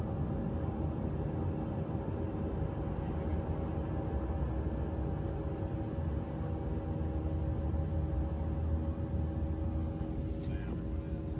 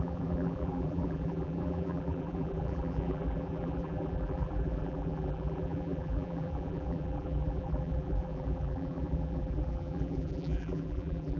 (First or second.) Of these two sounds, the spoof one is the second